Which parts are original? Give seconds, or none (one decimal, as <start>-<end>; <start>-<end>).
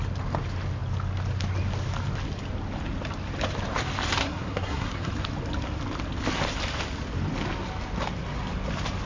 0.0-4.2; 5.1-9.1